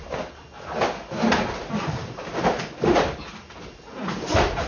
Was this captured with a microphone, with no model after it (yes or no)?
yes